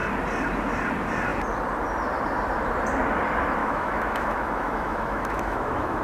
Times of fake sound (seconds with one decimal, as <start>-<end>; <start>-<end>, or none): 3.6-6.0